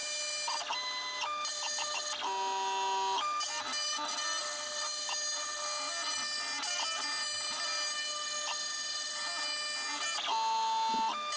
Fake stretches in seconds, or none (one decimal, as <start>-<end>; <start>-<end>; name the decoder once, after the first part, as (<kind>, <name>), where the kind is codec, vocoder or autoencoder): none